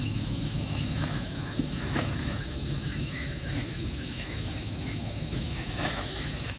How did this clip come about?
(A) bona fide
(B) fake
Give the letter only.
B